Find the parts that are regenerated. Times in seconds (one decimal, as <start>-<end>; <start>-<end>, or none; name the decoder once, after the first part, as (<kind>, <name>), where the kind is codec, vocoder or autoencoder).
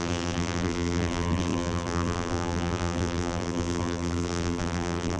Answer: 0.0-5.2 (vocoder, BigVGAN v2)